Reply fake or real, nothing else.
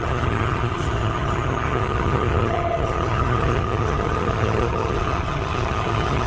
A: fake